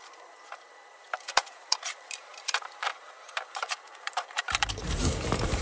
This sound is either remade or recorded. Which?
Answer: remade